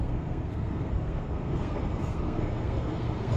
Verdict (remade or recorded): remade